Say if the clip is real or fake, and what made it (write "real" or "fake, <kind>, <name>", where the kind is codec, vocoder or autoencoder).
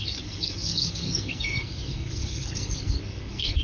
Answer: fake, codec, SNAC